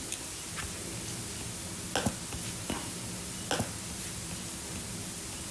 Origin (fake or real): real